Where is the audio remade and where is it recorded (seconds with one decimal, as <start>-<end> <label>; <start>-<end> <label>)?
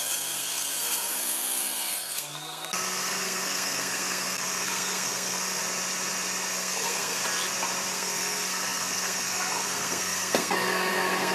0.0-5.6 remade; 5.6-6.5 recorded; 6.5-7.2 remade; 7.2-7.9 recorded; 7.9-11.3 remade